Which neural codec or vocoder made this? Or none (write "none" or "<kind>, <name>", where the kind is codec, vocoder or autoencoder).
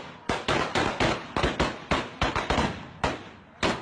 none